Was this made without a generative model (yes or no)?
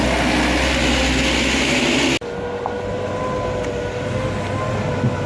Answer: yes